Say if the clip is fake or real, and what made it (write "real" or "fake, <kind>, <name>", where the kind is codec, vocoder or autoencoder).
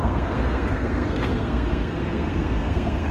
fake, codec, SNAC